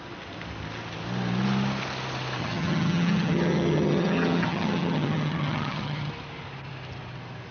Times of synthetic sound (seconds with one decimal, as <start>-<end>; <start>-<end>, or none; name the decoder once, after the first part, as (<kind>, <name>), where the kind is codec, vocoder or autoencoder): 2.4-6.1 (vocoder, HiFi-GAN)